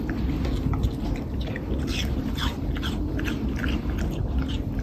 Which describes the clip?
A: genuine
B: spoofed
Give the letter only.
A